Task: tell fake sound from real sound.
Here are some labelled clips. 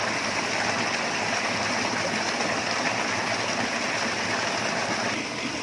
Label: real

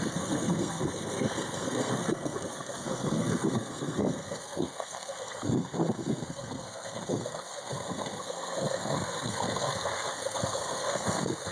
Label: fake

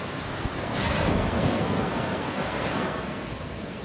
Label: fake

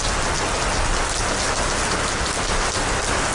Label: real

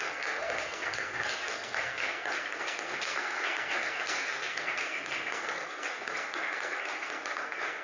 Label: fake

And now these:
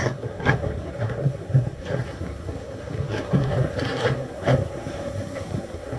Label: fake